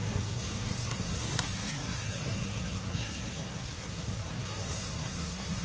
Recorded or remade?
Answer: remade